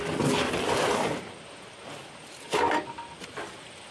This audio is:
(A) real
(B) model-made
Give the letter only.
A